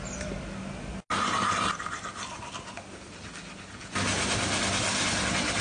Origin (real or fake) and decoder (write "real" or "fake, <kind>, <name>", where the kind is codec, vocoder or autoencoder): real